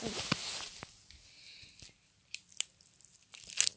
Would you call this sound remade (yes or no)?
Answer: no